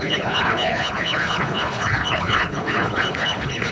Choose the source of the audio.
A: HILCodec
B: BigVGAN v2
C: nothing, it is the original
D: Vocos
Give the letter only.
A